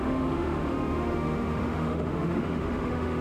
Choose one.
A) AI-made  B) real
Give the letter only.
A